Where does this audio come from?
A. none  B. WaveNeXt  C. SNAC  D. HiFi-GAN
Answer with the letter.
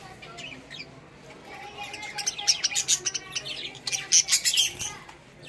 A